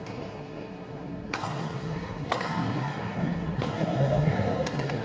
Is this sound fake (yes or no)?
yes